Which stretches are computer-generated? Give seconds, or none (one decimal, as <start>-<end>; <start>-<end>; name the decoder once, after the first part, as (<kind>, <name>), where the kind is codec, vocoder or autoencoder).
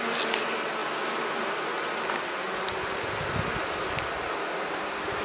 none